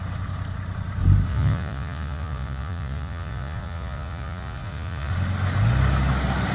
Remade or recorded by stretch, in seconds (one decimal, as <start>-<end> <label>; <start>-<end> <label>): 0.0-1.3 recorded; 1.3-5.1 remade; 5.1-6.5 recorded